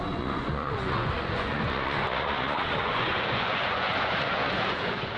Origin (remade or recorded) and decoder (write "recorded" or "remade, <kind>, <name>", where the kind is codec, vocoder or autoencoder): remade, vocoder, Vocos